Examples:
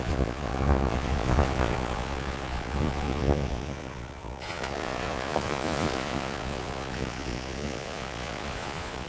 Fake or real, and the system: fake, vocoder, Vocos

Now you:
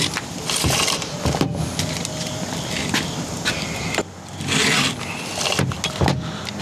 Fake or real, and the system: real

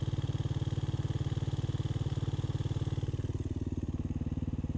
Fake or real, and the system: real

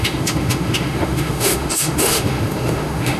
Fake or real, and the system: fake, autoencoder, DAC-VAE